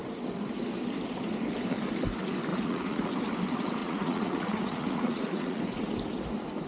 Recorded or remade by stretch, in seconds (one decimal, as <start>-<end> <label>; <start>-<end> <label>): 0.0-2.5 recorded; 2.5-3.1 remade; 3.1-3.8 recorded; 3.8-5.6 remade; 5.6-6.7 recorded